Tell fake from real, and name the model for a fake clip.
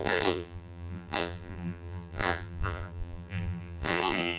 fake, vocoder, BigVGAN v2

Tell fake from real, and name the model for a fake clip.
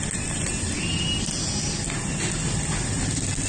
real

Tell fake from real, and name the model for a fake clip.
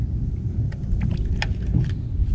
real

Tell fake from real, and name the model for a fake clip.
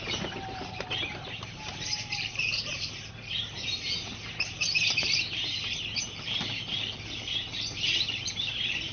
fake, vocoder, BigVGAN v2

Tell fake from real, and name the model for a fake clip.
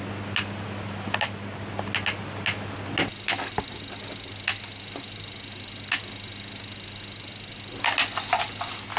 real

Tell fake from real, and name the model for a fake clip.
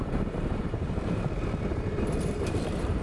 fake, vocoder, BigVGAN v2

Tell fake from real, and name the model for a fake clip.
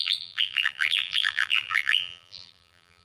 fake, vocoder, BigVGAN v2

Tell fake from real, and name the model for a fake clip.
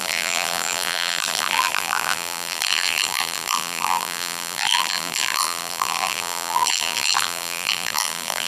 fake, vocoder, BigVGAN v2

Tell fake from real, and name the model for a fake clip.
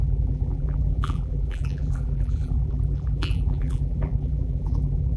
fake, vocoder, BigVGAN v2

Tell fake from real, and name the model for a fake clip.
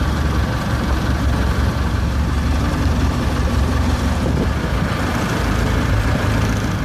fake, vocoder, BigVGAN v2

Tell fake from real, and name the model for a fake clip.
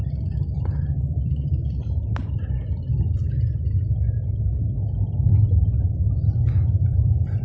fake, vocoder, BigVGAN v2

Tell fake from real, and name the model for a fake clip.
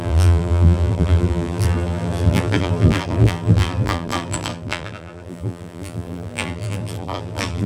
fake, vocoder, BigVGAN v2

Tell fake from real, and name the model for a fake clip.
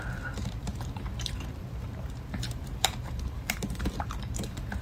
fake, vocoder, BigVGAN v2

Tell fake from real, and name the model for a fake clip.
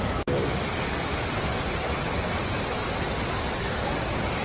real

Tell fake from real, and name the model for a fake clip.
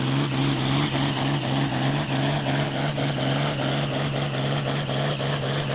real